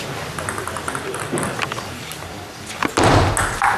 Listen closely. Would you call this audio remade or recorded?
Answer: recorded